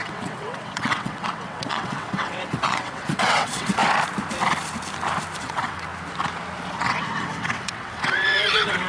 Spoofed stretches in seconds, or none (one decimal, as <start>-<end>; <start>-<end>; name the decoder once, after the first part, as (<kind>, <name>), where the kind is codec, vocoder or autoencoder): 0.0-3.8 (vocoder, WaveNeXt); 5.4-5.9; 6.7-8.9